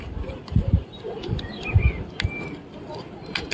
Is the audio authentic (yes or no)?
no